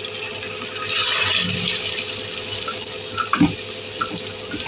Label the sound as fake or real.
real